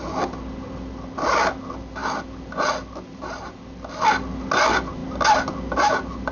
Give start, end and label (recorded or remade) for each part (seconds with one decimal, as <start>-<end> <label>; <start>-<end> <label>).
0.0-6.3 recorded